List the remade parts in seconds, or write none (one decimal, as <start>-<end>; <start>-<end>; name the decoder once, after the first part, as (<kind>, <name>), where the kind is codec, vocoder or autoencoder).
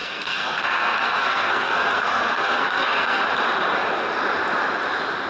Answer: 0.0-3.2 (codec, SNAC)